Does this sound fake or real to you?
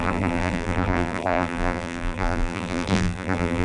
fake